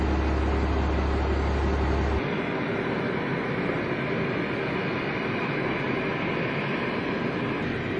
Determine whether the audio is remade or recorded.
recorded